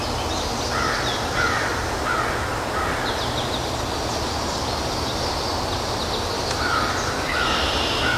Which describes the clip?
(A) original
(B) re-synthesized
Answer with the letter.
A